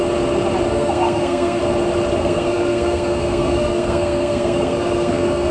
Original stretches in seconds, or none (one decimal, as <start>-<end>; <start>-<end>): 0.0-0.7; 1.6-2.2